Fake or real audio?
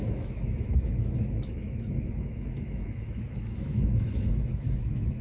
fake